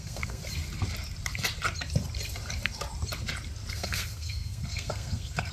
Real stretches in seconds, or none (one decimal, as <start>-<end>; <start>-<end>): 0.4-3.7